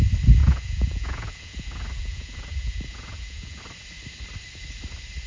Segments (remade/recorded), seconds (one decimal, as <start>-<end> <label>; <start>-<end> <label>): 0.0-0.4 recorded; 0.4-3.6 remade; 3.6-5.3 recorded